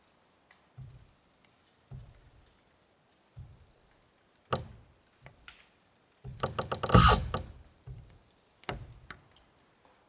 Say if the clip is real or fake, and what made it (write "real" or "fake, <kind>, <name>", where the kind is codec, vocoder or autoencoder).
real